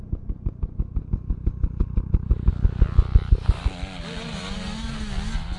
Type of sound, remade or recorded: recorded